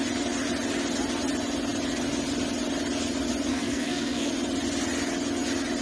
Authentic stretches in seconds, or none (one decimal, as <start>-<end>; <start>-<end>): 0.0-3.5; 4.3-5.8